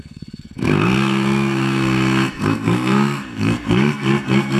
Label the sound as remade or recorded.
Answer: remade